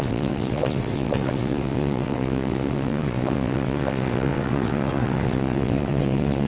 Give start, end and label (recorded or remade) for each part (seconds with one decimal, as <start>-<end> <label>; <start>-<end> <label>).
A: 0.0-6.5 remade